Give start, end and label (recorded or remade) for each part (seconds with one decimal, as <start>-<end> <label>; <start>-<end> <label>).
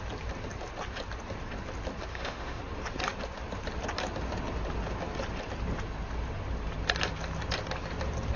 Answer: 0.0-2.1 recorded; 2.1-2.6 remade; 2.6-8.4 recorded